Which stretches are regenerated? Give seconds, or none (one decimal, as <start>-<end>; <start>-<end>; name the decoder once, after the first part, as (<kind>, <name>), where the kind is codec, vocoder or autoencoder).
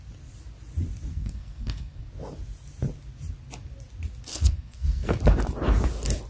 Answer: 1.1-2.0 (codec, SNAC); 4.3-5.2